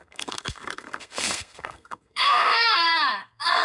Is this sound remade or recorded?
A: remade